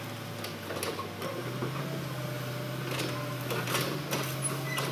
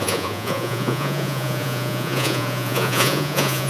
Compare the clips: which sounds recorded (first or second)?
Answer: first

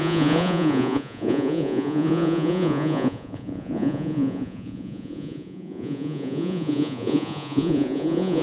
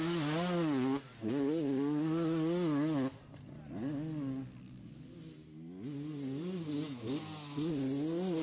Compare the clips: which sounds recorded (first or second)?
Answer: second